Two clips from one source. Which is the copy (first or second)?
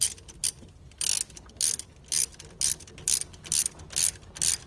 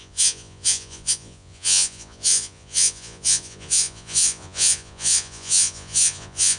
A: second